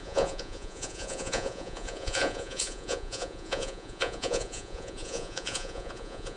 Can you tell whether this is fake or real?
fake